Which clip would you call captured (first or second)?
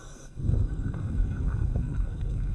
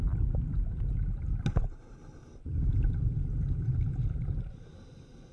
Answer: second